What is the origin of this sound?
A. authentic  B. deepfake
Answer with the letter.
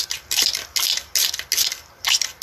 A